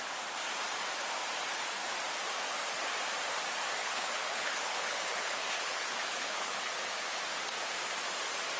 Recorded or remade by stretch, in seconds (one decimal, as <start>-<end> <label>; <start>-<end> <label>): 0.0-3.8 recorded; 3.8-7.2 remade; 7.2-8.6 recorded